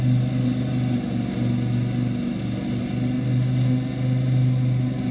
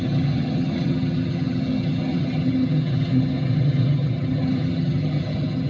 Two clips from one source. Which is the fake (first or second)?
second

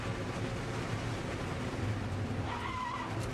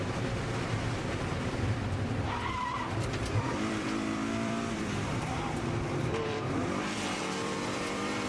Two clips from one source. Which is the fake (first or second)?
second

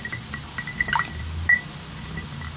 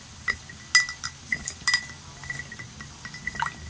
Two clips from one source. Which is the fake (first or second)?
first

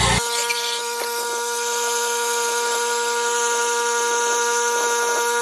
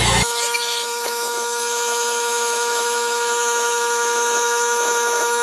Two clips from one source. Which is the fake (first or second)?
second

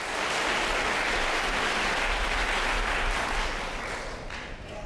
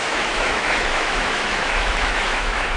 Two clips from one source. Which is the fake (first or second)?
second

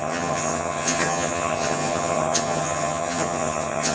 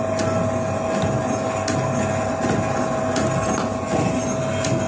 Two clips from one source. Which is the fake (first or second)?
first